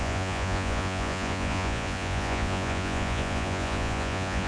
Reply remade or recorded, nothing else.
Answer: remade